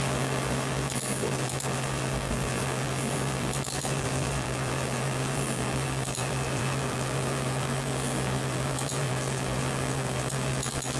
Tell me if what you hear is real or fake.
fake